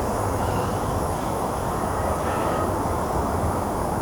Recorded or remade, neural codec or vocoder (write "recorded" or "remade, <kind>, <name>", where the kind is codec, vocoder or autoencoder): remade, codec, DAC